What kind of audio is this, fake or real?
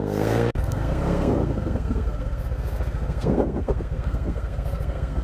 fake